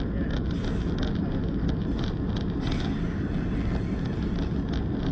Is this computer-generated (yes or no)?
no